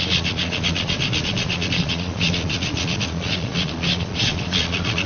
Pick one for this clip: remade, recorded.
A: remade